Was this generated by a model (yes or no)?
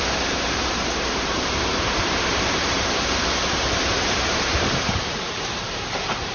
yes